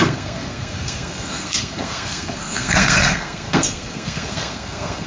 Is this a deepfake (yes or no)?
yes